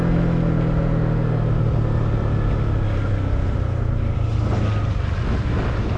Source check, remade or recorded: recorded